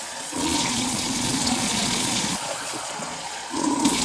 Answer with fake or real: fake